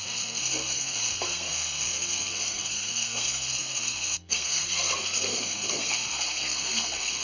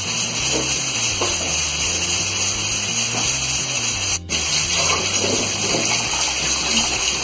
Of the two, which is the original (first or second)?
second